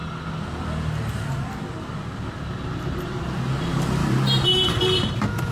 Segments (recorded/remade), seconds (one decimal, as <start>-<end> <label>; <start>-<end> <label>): 0.0-4.0 recorded; 4.0-4.8 remade; 4.8-5.5 recorded